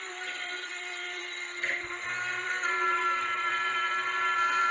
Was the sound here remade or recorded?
remade